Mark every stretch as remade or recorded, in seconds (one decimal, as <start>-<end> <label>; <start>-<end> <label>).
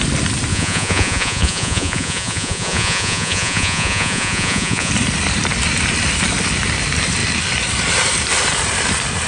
0.0-0.5 recorded; 0.5-4.9 remade; 4.9-9.3 recorded